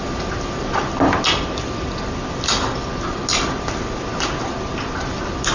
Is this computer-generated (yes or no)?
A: no